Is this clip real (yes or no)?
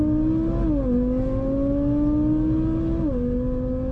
yes